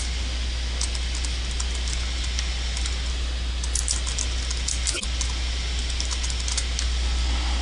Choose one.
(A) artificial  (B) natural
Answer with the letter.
B